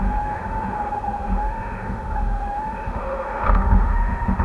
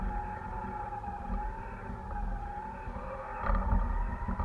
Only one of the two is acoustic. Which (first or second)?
second